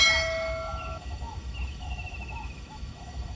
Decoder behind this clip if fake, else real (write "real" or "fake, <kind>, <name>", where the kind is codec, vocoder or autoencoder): fake, autoencoder, DAC-VAE